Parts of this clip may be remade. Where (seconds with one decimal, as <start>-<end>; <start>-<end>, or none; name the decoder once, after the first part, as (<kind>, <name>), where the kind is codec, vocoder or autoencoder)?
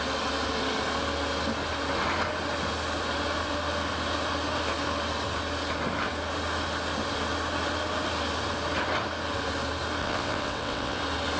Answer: 10.0-11.0 (vocoder, WaveNeXt)